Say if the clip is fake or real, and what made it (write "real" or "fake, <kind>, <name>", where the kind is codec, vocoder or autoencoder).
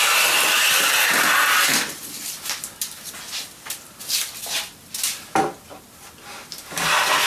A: real